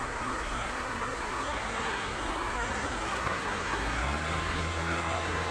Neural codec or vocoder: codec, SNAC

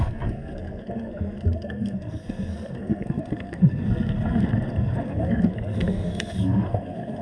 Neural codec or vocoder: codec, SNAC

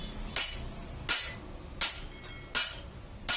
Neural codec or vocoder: none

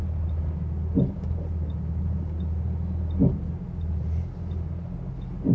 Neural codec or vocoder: none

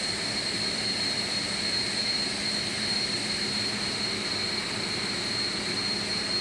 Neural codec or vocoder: none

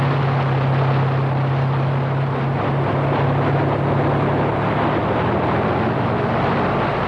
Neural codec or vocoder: none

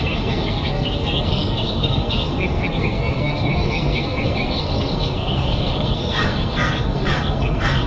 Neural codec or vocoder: codec, SNAC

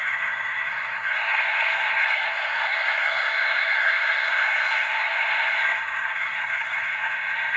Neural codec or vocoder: codec, SNAC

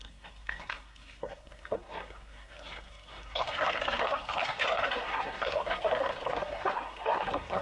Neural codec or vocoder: codec, SNAC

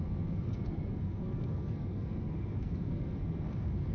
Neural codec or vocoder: codec, SNAC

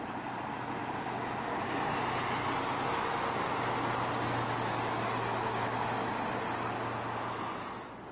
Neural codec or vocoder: none